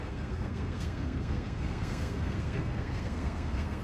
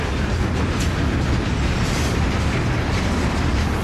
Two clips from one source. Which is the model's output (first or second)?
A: first